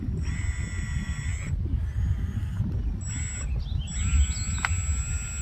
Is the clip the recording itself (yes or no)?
yes